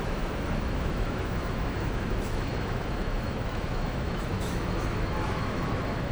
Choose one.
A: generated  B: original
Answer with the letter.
A